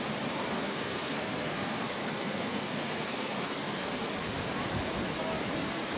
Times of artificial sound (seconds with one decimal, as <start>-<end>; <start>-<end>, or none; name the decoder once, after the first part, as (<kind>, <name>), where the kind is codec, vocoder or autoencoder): 0.5-4.1 (codec, SNAC)